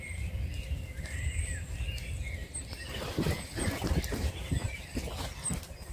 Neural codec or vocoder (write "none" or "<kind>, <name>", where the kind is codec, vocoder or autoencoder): none